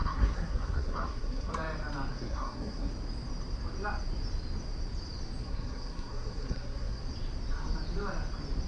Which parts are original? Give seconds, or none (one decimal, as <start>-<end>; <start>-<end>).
1.5-2.1; 2.9-5.4; 7.0-8.7